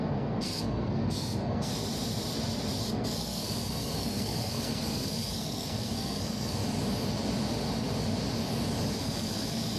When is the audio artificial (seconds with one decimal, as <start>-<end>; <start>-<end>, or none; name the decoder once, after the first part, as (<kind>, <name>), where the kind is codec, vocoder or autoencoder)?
0.0-1.7 (codec, SNAC); 2.8-6.6; 8.9-9.8